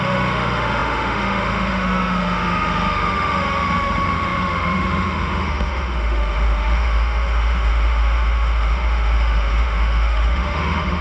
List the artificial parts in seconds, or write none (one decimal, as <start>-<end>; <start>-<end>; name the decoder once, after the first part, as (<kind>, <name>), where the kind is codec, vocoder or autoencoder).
0.0-11.0 (autoencoder, DAC-VAE)